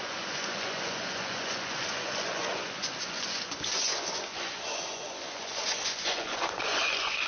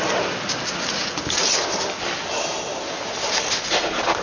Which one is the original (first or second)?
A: second